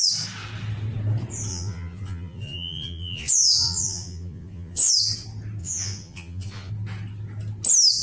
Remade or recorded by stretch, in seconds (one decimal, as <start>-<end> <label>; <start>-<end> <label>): 0.0-1.5 recorded; 1.5-4.9 remade; 4.9-5.6 recorded; 5.6-6.7 remade; 6.7-8.0 recorded